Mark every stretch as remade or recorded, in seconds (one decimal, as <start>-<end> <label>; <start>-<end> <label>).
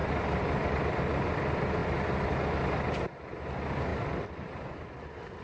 0.0-1.0 remade; 1.0-3.9 recorded; 3.9-4.9 remade; 4.9-5.4 recorded